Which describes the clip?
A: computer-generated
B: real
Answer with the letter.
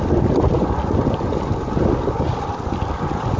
B